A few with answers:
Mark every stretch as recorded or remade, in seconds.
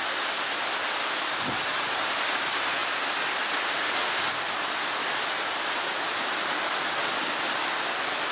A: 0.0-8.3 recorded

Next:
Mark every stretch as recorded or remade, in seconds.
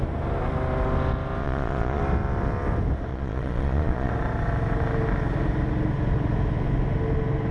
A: 0.0-1.4 recorded; 1.4-2.0 remade; 2.0-3.1 recorded; 3.1-4.1 remade; 4.1-7.5 recorded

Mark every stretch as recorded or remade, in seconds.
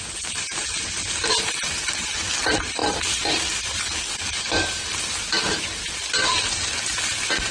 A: 0.0-7.5 recorded